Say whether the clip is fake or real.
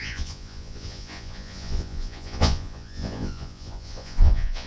fake